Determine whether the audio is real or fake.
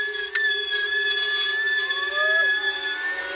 real